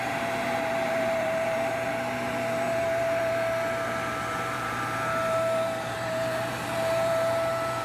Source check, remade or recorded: remade